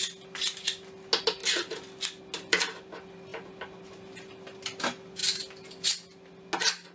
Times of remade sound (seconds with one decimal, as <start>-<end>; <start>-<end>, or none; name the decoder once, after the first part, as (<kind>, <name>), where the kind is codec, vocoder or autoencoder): none